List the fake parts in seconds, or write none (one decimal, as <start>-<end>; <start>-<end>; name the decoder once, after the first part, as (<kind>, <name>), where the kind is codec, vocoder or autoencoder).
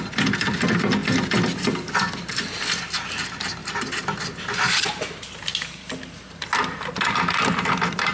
none